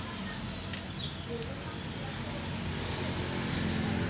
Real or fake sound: real